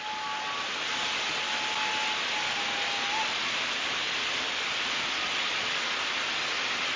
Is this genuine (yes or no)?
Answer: yes